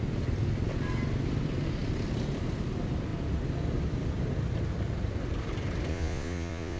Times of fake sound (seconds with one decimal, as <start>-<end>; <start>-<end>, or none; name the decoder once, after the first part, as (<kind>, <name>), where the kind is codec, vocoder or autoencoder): 5.9-6.8 (vocoder, Vocos)